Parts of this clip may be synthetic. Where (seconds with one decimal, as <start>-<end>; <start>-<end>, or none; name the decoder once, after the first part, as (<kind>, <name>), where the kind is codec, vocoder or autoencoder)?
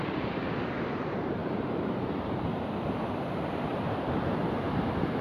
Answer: 0.0-2.5 (vocoder, BigVGAN v2); 3.3-5.2